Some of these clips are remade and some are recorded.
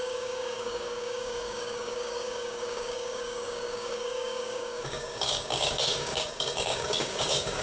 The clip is remade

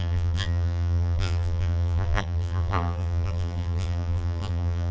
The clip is remade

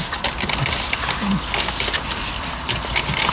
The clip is recorded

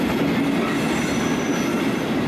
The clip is recorded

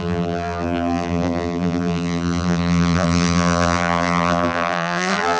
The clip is remade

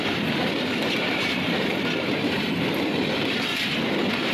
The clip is remade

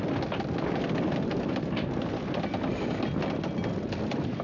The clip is recorded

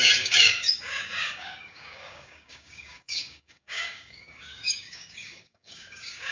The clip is remade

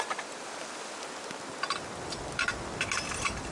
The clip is recorded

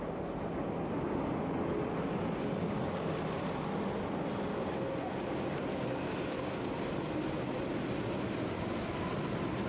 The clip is recorded